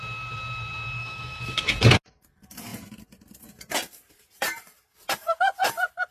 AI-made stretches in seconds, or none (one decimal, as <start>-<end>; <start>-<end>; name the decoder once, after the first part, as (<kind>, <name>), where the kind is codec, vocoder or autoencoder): 1.0-1.7 (autoencoder, DAC-VAE)